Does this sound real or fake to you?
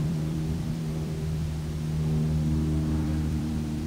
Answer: fake